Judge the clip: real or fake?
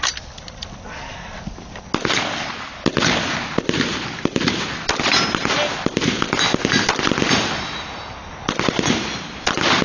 real